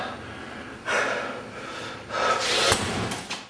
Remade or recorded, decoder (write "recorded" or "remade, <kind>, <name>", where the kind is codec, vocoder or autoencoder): recorded